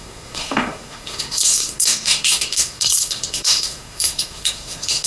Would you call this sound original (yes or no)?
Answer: no